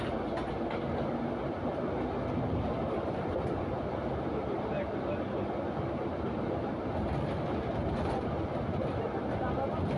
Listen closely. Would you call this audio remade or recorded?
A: recorded